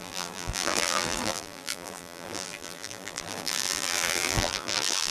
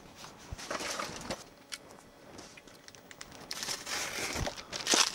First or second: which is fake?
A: first